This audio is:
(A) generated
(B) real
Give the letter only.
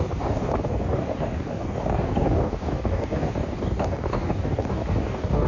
A